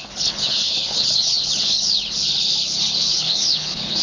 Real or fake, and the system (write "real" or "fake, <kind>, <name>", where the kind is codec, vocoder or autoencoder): fake, codec, HILCodec